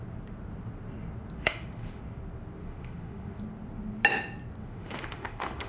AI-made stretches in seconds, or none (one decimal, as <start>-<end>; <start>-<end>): 1.4-2.0; 2.6-3.4; 4.6-5.7